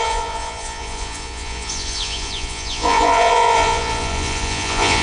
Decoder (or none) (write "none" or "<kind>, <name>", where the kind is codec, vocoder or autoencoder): vocoder, Vocos